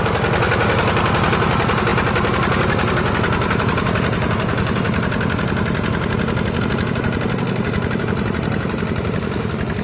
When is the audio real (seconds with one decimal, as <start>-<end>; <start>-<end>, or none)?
0.0-9.8